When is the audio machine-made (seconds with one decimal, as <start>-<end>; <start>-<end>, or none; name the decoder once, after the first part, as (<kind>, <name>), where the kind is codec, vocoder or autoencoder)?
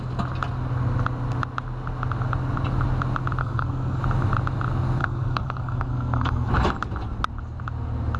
3.4-4.0 (codec, SNAC); 5.0-6.5